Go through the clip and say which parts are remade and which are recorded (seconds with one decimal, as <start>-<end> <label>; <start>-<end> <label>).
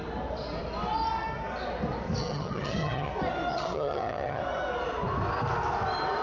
0.0-2.2 recorded; 2.2-3.1 remade; 3.1-3.5 recorded; 3.5-4.4 remade; 4.4-6.2 recorded